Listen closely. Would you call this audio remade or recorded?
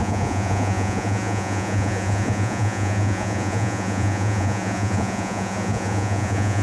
remade